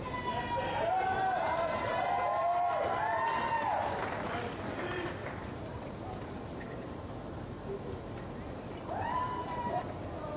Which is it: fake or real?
fake